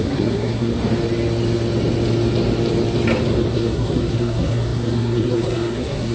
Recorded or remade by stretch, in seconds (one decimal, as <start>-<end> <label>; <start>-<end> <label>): 0.0-0.7 remade; 0.7-3.5 recorded; 3.5-6.1 remade